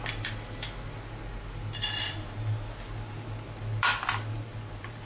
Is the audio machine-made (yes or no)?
no